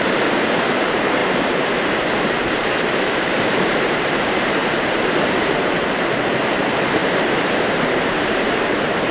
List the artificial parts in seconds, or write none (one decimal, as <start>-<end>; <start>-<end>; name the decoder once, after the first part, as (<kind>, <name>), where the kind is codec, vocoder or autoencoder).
0.0-4.6 (vocoder, BigVGAN v2); 5.2-9.1